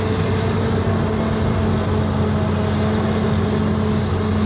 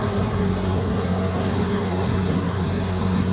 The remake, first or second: second